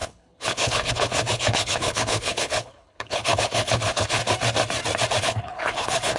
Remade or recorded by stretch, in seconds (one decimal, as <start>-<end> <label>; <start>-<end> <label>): 0.0-4.2 remade; 4.2-5.2 recorded; 5.2-6.2 remade